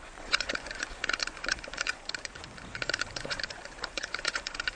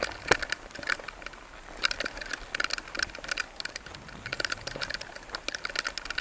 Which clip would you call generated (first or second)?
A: first